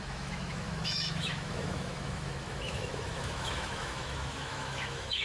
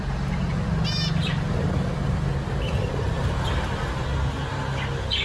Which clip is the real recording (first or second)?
second